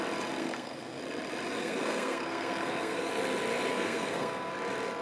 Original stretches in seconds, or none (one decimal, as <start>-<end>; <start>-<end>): 0.0-0.4; 1.0-1.6; 3.1-3.7; 4.5-5.0